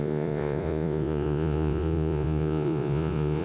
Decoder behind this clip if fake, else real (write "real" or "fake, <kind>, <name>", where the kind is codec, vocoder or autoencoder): fake, vocoder, Vocos